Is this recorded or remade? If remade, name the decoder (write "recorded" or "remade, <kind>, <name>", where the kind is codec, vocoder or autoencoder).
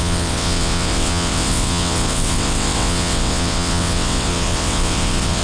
remade, vocoder, WaveNeXt